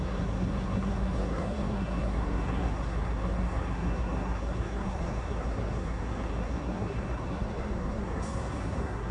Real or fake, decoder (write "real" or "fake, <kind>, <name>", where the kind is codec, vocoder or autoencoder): fake, codec, SNAC